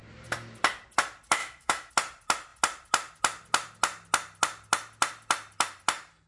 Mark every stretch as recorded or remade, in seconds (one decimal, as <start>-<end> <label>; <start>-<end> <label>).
0.0-1.4 recorded; 1.4-1.9 remade; 1.9-6.3 recorded